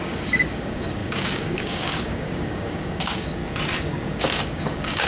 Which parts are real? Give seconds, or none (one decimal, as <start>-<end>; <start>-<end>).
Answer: 3.4-4.2